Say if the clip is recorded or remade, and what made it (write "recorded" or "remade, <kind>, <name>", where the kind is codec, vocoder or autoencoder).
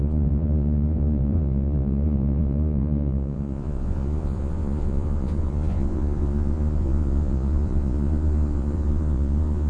remade, vocoder, Vocos